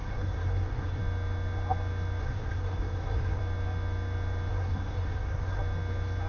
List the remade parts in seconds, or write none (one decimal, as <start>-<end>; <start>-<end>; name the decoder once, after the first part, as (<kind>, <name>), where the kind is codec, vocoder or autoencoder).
0.0-1.0 (codec, SNAC); 2.2-3.4; 4.5-5.6